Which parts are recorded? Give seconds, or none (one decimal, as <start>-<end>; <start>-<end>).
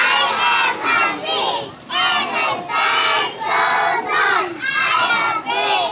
0.0-3.1; 5.1-5.9